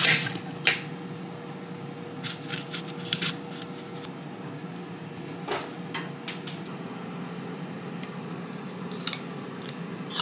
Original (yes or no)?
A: yes